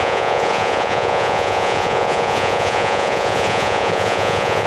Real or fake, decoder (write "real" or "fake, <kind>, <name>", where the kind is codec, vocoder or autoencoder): fake, vocoder, Vocos